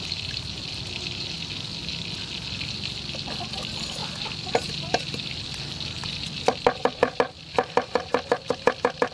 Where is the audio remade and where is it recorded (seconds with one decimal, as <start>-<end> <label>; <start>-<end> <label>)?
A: 0.0-4.0 recorded; 4.0-4.7 remade; 4.7-9.1 recorded